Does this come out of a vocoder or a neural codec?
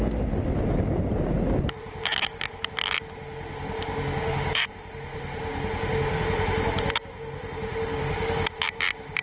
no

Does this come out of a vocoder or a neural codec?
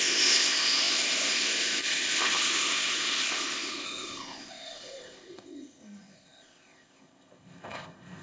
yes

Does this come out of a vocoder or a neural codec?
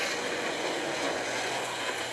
yes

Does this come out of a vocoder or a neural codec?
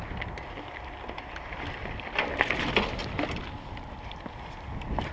no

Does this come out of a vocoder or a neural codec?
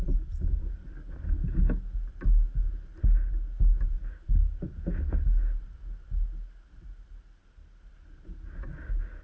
no